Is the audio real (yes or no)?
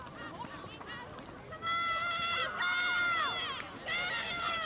yes